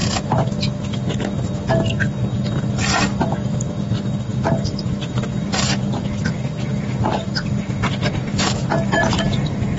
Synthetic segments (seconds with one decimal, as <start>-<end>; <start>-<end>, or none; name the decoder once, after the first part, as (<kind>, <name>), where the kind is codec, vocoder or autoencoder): none